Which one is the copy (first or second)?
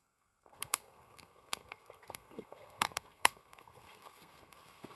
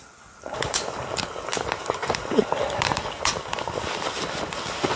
first